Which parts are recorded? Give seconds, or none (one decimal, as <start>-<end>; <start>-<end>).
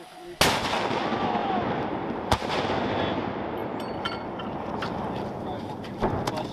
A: 0.0-1.4; 2.6-6.5